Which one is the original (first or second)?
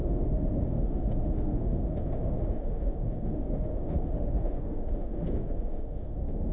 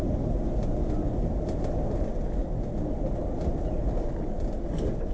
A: second